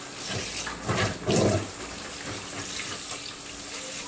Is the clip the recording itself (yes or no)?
yes